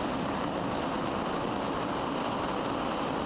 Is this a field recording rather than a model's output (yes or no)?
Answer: yes